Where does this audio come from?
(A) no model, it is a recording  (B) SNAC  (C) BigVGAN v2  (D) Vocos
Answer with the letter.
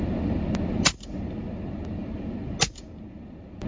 A